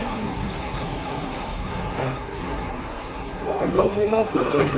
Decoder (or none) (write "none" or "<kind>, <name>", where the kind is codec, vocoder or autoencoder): codec, SNAC